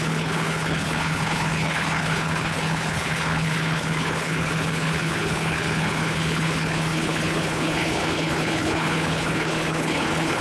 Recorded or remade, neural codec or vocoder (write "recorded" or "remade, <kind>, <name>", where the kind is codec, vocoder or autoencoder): remade, codec, HILCodec